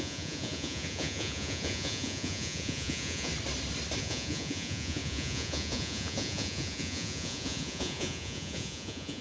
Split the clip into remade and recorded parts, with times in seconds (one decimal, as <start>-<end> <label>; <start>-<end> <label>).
0.0-3.3 remade; 3.3-4.0 recorded; 4.0-9.2 remade